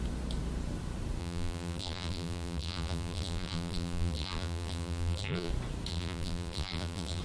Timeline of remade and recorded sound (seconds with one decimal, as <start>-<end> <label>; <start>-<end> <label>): 0.0-1.2 recorded; 1.2-5.5 remade; 5.5-5.9 recorded; 5.9-7.2 remade